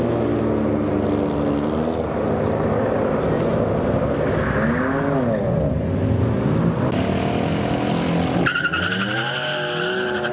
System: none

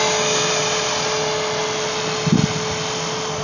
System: none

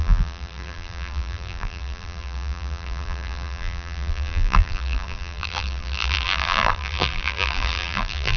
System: vocoder, BigVGAN v2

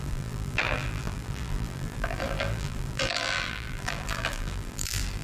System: vocoder, BigVGAN v2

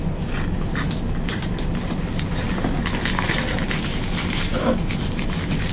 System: none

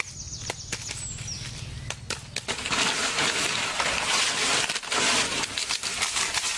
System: none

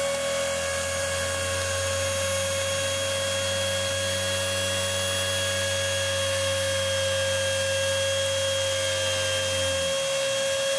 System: none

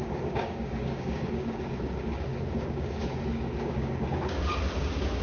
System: codec, DAC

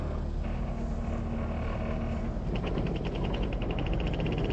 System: none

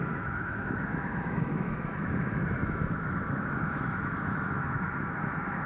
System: autoencoder, DAC-VAE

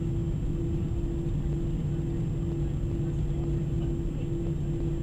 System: none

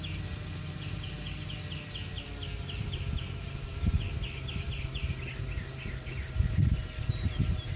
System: none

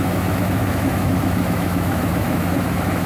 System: autoencoder, DAC-VAE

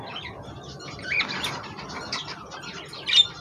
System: none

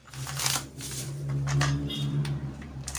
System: vocoder, BigVGAN v2